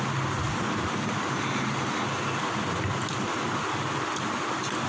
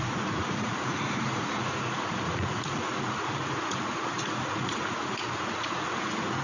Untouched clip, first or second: first